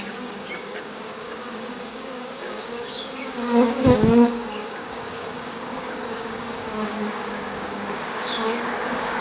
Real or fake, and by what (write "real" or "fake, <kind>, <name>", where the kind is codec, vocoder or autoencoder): fake, codec, DAC